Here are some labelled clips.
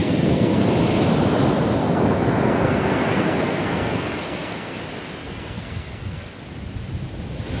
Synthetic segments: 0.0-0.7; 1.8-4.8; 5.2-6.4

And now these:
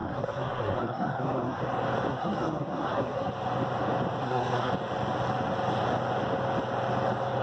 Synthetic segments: 0.0-1.6; 2.1-3.3; 4.2-4.7

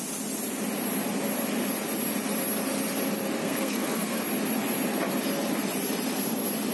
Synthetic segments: 3.4-4.2